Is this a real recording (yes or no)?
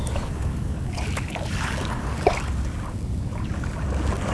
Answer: no